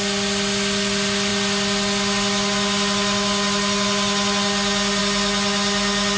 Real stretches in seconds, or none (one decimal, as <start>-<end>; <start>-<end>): 0.0-6.2